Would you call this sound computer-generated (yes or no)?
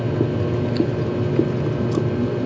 no